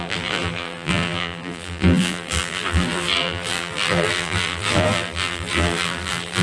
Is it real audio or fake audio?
fake